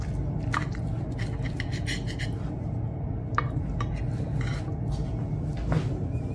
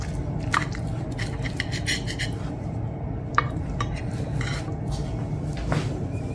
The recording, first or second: first